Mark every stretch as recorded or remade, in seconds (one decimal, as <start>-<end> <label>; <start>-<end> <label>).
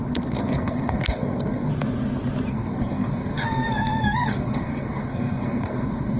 0.0-1.7 remade; 1.7-2.5 recorded; 2.5-6.2 remade